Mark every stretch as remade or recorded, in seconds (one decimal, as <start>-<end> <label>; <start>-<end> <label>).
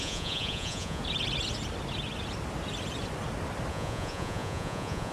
0.0-1.0 remade; 1.0-3.7 recorded; 3.7-5.1 remade